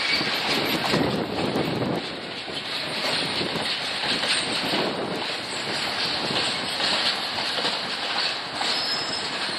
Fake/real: real